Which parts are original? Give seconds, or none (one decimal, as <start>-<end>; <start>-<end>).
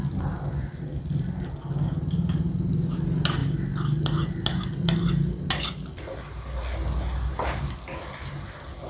0.0-8.9